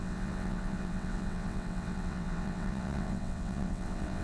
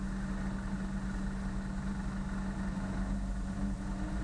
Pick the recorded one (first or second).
second